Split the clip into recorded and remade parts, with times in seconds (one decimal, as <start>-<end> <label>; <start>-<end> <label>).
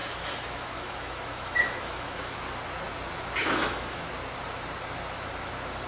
0.0-2.4 remade; 2.4-3.4 recorded; 3.4-4.1 remade; 4.1-5.9 recorded